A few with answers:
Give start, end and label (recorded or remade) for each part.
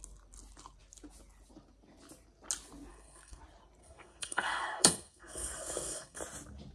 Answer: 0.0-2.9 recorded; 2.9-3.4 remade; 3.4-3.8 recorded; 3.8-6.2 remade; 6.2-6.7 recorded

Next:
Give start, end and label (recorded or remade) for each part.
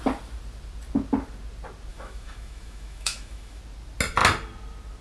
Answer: 0.0-1.9 recorded; 1.9-3.6 remade; 3.6-5.0 recorded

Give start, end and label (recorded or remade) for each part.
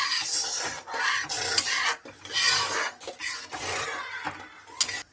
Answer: 0.0-5.1 recorded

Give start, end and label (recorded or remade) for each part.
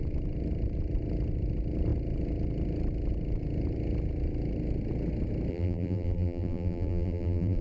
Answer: 0.0-5.5 recorded; 5.5-7.6 remade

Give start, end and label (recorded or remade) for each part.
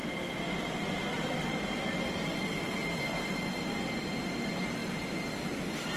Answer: 0.0-6.0 recorded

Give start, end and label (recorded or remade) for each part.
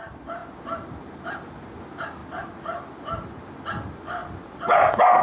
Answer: 0.0-5.2 recorded